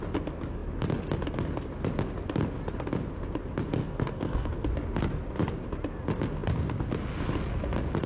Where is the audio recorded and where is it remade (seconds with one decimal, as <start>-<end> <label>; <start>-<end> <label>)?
0.0-3.8 recorded; 3.8-4.5 remade; 4.5-8.1 recorded